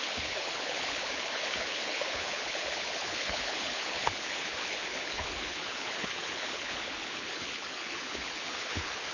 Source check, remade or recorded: remade